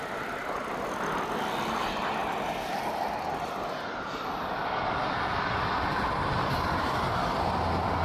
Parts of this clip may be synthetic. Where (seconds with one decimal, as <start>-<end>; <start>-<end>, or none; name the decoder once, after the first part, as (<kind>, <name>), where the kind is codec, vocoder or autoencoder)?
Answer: none